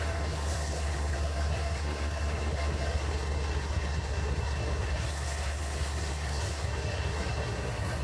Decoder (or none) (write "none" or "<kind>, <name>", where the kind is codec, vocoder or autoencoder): codec, SNAC